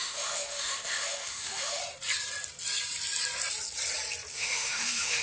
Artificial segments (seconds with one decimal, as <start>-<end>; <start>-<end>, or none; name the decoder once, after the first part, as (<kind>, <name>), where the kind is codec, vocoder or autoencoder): 0.0-1.8 (autoencoder, DAC-VAE); 4.3-5.2